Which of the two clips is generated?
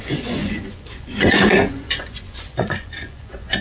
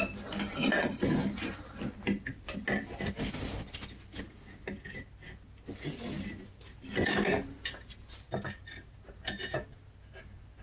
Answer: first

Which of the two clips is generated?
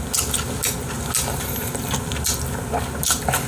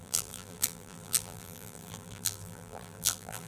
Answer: second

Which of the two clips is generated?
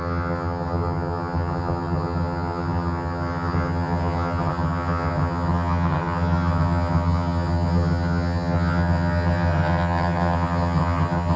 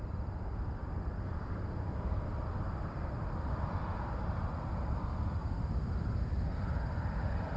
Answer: first